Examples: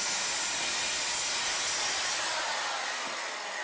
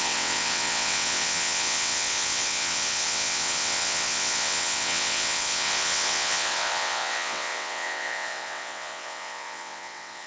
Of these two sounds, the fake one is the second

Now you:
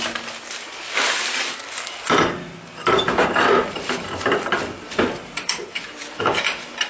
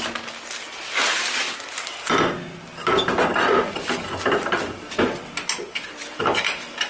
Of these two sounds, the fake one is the first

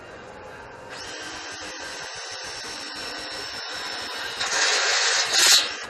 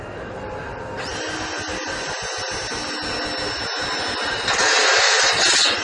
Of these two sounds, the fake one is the first